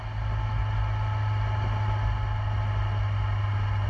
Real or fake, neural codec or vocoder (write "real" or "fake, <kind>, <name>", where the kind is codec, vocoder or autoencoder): real